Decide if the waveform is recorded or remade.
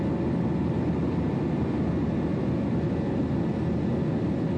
recorded